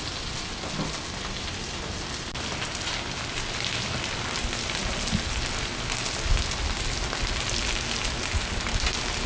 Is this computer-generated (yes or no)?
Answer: no